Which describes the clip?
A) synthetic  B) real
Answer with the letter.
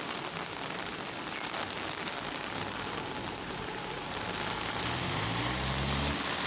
B